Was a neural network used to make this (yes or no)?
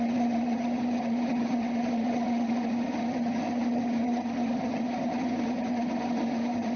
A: yes